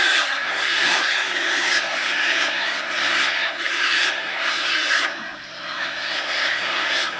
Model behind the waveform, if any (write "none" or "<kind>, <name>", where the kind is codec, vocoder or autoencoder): codec, SNAC